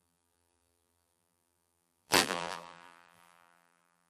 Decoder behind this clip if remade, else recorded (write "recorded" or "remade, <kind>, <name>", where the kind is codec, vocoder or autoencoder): remade, vocoder, BigVGAN v2